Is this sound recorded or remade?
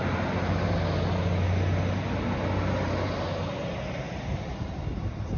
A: recorded